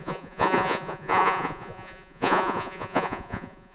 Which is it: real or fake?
fake